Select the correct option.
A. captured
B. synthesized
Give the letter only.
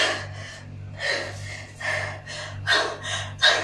A